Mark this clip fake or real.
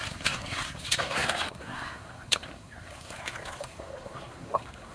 fake